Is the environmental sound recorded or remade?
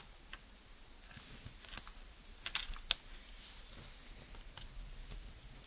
recorded